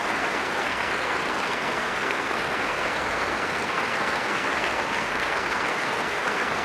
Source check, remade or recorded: remade